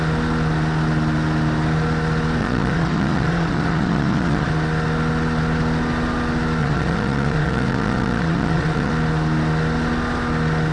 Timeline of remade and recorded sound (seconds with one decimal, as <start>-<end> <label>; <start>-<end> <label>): 0.0-2.4 recorded; 2.4-4.5 remade; 4.5-6.6 recorded; 6.6-8.9 remade; 8.9-10.7 recorded